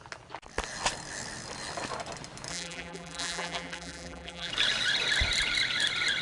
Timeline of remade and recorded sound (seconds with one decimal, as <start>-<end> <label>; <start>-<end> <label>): 0.0-2.5 recorded; 2.5-4.5 remade; 4.5-6.2 recorded

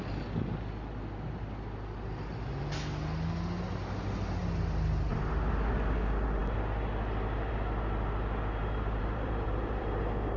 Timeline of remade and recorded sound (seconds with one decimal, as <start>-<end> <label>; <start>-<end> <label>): 0.0-8.6 recorded; 8.6-10.0 remade; 10.0-10.4 recorded

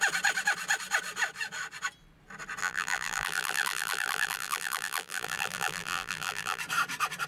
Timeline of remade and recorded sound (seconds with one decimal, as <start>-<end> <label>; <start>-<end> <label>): 0.0-2.6 recorded; 2.6-6.6 remade; 6.6-7.3 recorded

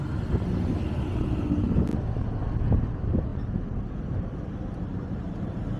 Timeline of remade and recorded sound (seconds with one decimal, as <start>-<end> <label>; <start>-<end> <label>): 0.0-5.8 recorded

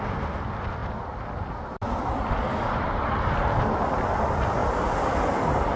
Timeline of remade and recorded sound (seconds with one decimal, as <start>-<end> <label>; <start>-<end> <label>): 0.0-0.8 recorded; 0.8-3.3 remade; 3.3-4.6 recorded; 4.6-5.8 remade

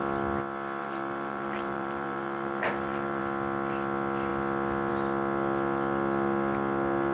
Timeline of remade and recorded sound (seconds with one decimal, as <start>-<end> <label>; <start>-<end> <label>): 0.0-0.8 recorded; 0.8-3.2 remade; 3.2-7.1 recorded

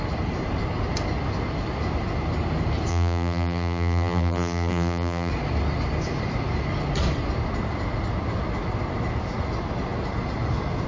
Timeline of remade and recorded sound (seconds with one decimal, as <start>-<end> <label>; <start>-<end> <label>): 0.0-2.9 recorded; 2.9-5.3 remade; 5.3-10.9 recorded